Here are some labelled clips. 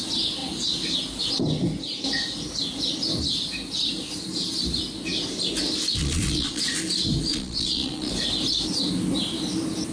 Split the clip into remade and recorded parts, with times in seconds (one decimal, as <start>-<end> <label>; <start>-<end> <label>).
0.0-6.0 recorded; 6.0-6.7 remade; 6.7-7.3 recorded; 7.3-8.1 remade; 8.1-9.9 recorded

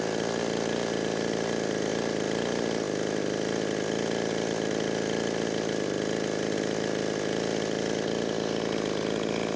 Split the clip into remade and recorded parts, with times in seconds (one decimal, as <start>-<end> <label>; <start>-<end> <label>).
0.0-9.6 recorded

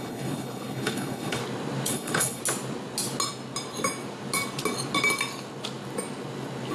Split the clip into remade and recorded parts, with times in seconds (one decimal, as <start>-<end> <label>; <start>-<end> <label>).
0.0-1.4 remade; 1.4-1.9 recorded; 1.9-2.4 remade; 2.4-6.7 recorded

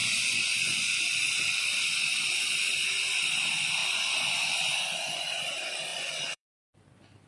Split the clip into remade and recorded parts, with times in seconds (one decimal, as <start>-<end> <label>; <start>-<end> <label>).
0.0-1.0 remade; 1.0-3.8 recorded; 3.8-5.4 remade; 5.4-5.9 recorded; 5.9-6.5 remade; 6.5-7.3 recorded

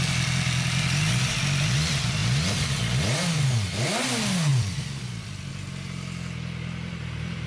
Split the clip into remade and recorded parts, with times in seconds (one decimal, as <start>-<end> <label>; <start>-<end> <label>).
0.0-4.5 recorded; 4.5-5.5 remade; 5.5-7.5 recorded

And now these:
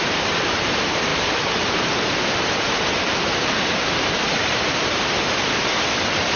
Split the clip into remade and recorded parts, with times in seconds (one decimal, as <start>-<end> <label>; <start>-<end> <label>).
0.0-6.4 remade